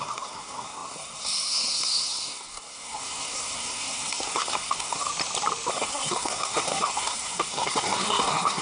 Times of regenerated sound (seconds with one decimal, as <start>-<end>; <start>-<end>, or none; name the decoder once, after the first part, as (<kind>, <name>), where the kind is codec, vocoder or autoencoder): 0.0-5.1 (codec, SNAC); 5.7-8.6